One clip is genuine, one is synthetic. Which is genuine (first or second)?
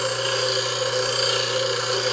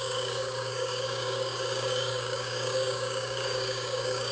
first